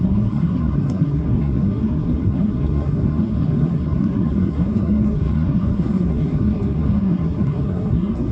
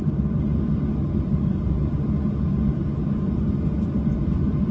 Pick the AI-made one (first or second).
first